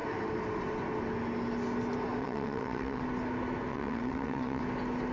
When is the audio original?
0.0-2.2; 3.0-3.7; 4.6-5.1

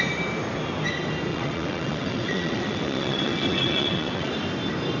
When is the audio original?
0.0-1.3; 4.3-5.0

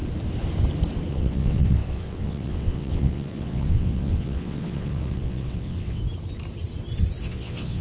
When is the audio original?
0.0-1.1; 6.0-7.2

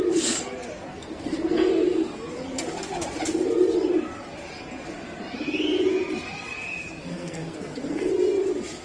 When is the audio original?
0.0-0.9; 1.7-7.0; 8.1-8.8

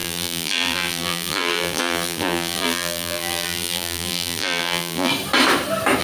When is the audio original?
5.1-6.0

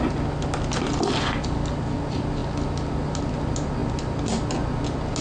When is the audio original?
0.0-5.2